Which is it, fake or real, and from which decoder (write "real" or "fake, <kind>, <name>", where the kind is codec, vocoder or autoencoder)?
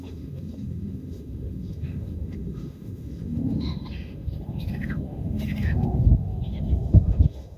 fake, autoencoder, DAC-VAE